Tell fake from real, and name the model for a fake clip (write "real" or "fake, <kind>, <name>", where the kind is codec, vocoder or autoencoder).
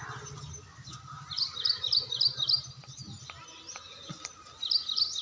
real